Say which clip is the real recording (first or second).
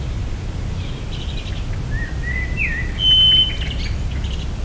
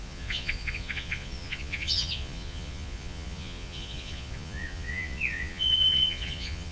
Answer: first